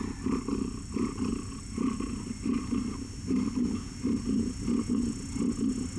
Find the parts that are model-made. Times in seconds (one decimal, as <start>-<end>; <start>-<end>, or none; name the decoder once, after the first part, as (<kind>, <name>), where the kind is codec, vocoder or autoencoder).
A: none